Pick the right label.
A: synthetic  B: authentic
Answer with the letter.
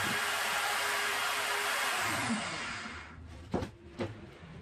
A